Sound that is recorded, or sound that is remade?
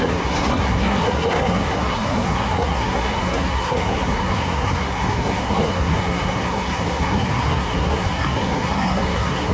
remade